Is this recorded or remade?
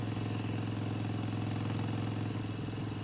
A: recorded